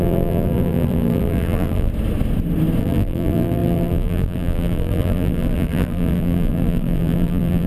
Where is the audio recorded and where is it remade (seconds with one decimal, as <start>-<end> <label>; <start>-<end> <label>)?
0.0-1.9 remade; 1.9-2.8 recorded; 2.8-7.7 remade

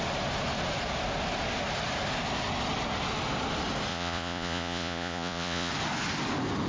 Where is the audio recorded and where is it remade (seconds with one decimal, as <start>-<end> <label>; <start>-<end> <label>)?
0.0-3.9 recorded; 3.9-5.7 remade; 5.7-6.7 recorded

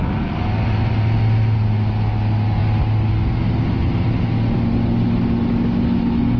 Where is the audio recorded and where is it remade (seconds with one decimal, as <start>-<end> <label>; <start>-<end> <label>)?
0.0-6.4 recorded

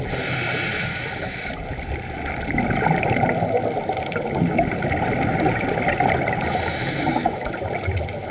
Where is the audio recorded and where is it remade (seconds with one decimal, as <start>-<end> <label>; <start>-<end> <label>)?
0.0-0.7 recorded; 0.7-1.5 remade; 1.5-6.8 recorded; 6.8-7.5 remade; 7.5-8.3 recorded

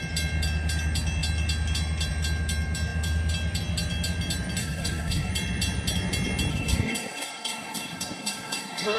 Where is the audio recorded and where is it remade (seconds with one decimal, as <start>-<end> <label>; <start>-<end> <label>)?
0.0-4.6 recorded; 4.6-5.3 remade; 5.3-6.5 recorded; 6.5-9.0 remade

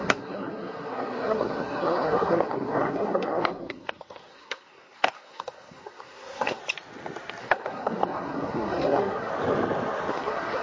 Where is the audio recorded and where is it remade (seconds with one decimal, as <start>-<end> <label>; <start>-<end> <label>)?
0.0-6.6 remade; 6.6-7.4 recorded; 7.4-9.3 remade; 9.3-10.1 recorded; 10.1-10.6 remade